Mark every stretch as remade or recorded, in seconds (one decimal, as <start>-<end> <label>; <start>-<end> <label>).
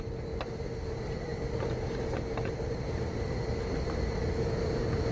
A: 0.0-5.1 recorded